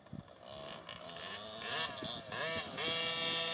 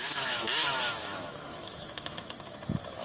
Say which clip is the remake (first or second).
second